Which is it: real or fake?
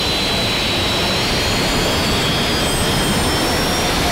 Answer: real